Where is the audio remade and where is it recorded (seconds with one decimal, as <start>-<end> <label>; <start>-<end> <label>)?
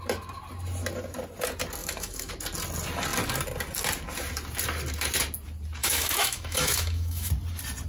0.0-1.8 recorded; 1.8-2.3 remade; 2.3-5.8 recorded; 5.8-7.3 remade; 7.3-7.9 recorded